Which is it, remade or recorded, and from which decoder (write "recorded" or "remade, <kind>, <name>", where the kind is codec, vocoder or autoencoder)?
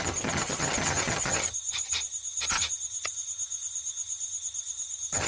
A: remade, vocoder, HiFi-GAN